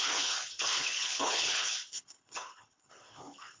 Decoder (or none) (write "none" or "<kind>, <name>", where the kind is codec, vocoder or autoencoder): codec, HILCodec